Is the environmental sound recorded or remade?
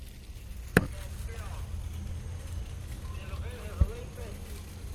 recorded